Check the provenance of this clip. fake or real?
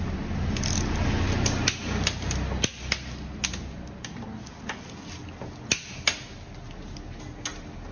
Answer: real